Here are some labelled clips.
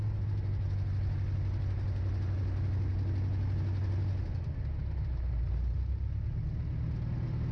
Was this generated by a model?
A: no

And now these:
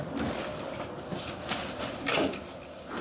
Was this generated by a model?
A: no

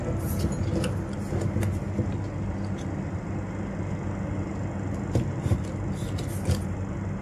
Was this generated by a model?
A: no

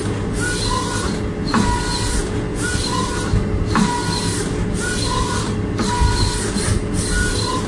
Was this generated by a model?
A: no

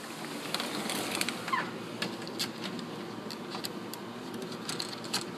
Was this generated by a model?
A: no